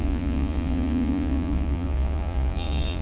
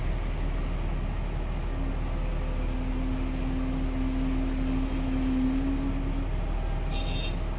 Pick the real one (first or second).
second